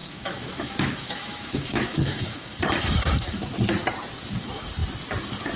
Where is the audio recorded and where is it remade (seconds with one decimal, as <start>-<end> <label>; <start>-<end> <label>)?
0.0-2.6 remade; 2.6-5.6 recorded